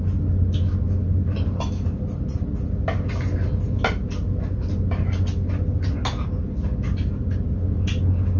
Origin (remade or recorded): recorded